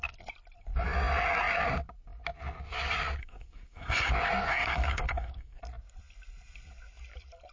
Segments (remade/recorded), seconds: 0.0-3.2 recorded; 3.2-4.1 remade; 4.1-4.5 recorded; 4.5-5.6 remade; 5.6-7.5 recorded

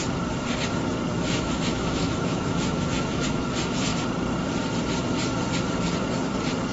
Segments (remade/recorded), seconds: 0.0-1.1 recorded; 1.1-3.5 remade; 3.5-6.7 recorded

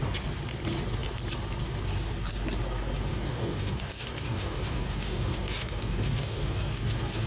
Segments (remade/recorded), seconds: 0.0-3.1 recorded; 3.1-7.3 remade

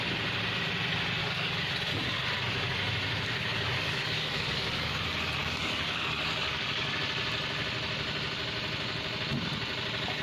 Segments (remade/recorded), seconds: 0.0-1.2 recorded; 1.2-1.7 remade; 1.7-3.4 recorded; 3.4-5.0 remade; 5.0-5.4 recorded; 5.4-7.0 remade; 7.0-10.2 recorded

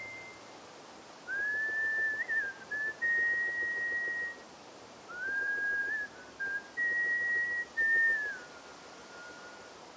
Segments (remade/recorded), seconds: 0.0-4.4 recorded; 4.4-6.2 remade; 6.2-10.0 recorded